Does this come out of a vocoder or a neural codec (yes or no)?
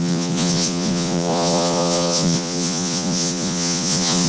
yes